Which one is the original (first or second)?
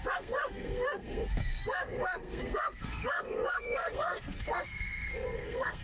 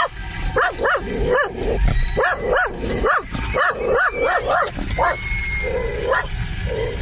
second